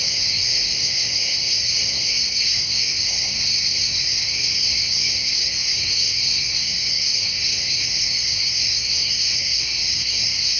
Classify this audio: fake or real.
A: fake